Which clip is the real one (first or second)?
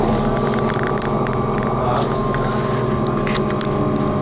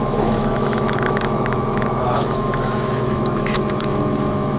first